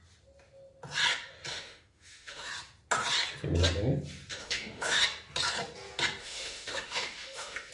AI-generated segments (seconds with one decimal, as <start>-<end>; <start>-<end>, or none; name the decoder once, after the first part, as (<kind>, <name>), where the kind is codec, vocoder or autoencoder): 1.5-2.5 (autoencoder, DAC-VAE); 4.3-5.0; 6.2-7.7